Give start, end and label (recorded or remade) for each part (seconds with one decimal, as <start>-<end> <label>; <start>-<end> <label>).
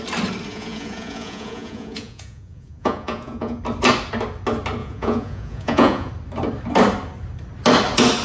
0.0-0.5 recorded; 0.5-3.6 remade; 3.6-4.8 recorded; 4.8-6.1 remade; 6.1-8.2 recorded